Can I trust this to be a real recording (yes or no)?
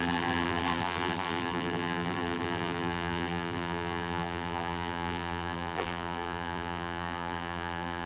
no